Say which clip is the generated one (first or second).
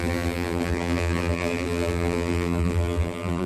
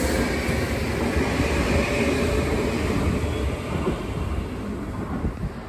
first